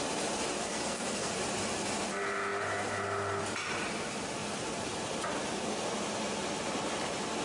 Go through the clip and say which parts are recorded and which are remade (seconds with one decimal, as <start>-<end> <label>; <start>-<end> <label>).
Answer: 0.0-0.6 recorded; 0.6-1.3 remade; 1.3-7.4 recorded